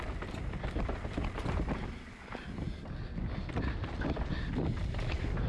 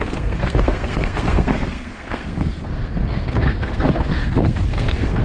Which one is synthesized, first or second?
second